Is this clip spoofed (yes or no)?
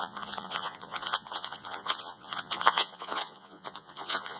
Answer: yes